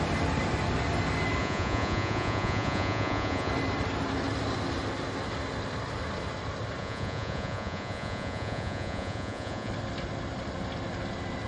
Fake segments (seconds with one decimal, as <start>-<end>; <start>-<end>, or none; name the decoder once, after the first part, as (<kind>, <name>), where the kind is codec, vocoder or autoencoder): 1.4-3.5 (vocoder, Vocos); 6.8-9.7